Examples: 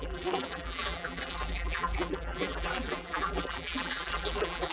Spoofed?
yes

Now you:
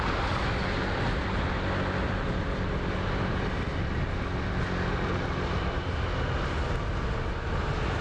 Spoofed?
no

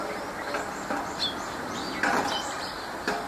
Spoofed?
no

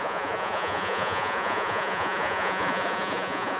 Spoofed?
yes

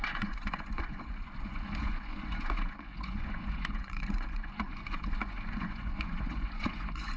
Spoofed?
yes